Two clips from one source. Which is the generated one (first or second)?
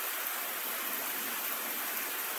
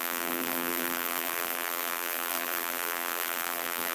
second